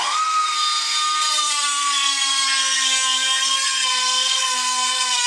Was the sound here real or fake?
fake